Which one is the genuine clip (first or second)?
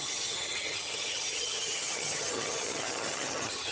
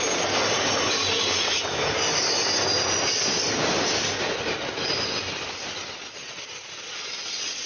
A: second